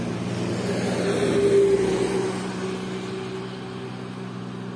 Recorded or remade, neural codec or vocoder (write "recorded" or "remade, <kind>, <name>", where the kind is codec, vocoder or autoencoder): recorded